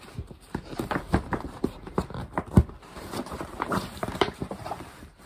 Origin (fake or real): fake